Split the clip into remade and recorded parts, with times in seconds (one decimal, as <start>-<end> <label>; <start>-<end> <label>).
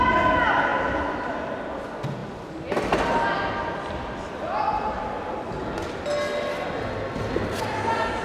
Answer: 0.0-8.2 recorded